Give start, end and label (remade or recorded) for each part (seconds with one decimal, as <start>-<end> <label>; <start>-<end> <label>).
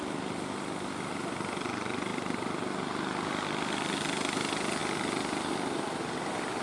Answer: 0.0-6.6 recorded